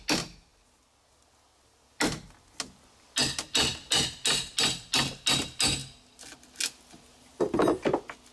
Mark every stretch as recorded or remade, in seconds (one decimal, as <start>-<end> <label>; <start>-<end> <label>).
0.0-8.3 recorded